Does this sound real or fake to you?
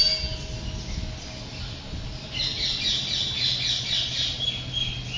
real